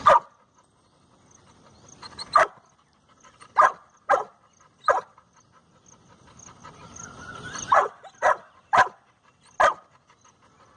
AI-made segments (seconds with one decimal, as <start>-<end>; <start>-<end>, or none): none

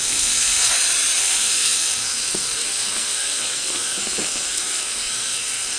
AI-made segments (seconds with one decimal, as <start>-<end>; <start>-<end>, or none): 0.0-0.7; 1.2-5.8

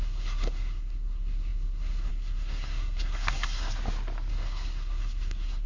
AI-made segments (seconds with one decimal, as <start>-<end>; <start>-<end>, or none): 0.0-3.7; 4.3-5.7

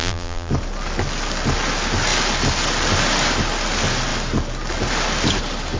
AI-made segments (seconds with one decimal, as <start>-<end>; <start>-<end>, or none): 0.0-0.5

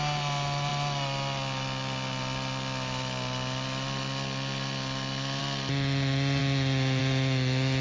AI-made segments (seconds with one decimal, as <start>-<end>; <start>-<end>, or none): none